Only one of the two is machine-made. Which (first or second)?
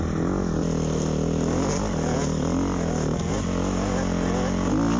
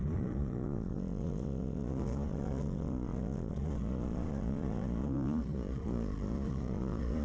second